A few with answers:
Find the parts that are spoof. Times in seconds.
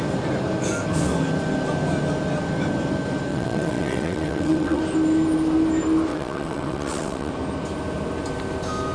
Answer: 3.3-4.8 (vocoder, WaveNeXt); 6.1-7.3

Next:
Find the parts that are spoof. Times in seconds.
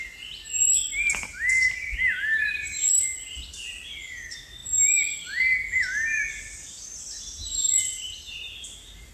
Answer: 7.8-8.3 (vocoder, BigVGAN v2)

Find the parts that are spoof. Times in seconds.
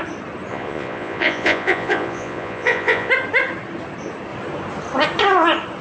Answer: 0.5-3.1 (vocoder, Vocos)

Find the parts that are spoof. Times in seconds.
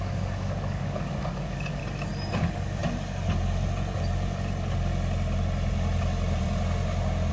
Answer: 0.0-1.8 (codec, DAC); 2.3-2.8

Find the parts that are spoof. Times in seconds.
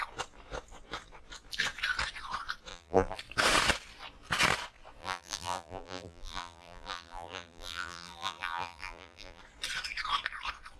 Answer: 2.7-3.2 (vocoder, BigVGAN v2); 5.0-9.4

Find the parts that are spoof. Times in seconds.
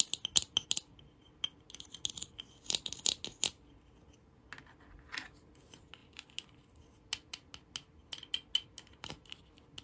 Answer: none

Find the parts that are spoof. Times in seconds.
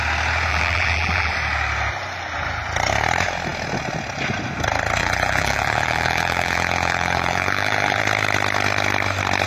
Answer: 0.5-1.3 (vocoder, BigVGAN v2); 5.0-8.0